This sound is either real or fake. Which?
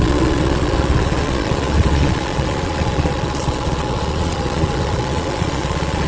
fake